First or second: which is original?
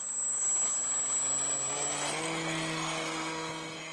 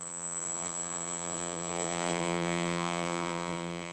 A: first